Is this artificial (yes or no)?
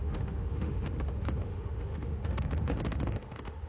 yes